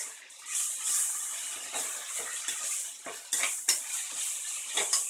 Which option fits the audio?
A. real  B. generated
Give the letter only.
A